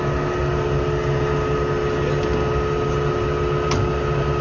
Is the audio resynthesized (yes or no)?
no